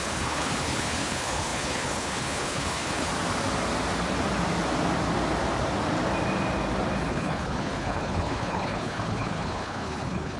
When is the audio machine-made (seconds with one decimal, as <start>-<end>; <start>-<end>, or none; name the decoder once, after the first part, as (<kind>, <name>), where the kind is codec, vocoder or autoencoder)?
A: 0.0-3.1 (codec, HILCodec); 7.1-10.4